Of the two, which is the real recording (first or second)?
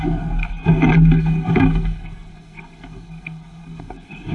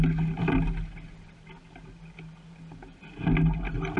second